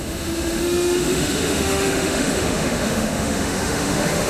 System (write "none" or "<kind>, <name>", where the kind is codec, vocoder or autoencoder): autoencoder, DAC-VAE